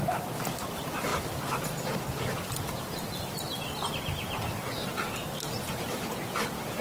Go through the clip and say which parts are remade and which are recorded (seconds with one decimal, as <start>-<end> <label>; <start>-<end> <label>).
0.0-6.8 recorded